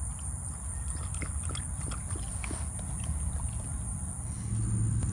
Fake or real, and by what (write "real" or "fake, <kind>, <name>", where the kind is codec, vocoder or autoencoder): real